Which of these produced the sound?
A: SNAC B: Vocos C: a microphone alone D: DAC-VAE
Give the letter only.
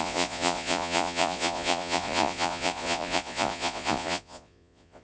B